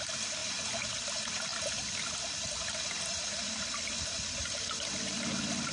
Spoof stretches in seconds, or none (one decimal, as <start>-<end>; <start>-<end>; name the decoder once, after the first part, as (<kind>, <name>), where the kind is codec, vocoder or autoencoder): none